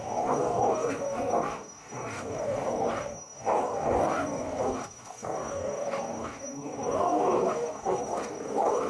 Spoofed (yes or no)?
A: yes